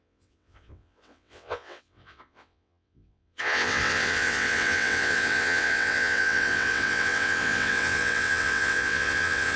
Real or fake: fake